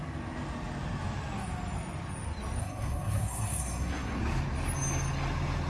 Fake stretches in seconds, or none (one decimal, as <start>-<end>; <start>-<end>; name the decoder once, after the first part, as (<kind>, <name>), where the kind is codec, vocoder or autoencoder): 2.6-4.2 (codec, SNAC)